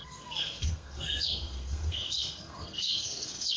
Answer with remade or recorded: remade